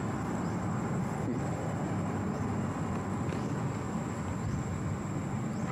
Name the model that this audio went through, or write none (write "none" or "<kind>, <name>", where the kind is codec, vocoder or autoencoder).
none